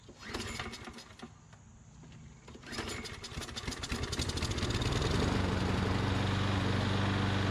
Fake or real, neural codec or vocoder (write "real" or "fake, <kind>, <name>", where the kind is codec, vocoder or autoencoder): real